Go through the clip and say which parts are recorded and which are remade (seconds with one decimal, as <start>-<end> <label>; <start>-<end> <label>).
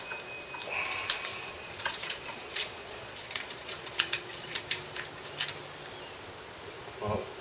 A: 0.0-1.3 recorded; 1.3-4.6 remade; 4.6-7.4 recorded